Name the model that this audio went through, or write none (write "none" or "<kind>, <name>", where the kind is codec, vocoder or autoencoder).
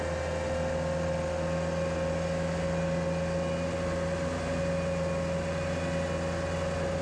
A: none